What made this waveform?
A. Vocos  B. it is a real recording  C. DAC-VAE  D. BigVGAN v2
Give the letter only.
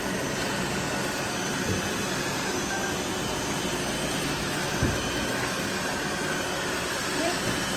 B